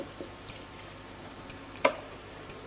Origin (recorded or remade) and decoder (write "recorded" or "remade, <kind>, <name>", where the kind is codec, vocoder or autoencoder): remade, vocoder, BigVGAN v2